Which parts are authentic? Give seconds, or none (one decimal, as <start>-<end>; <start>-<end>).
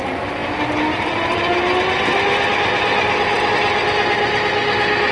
0.0-5.1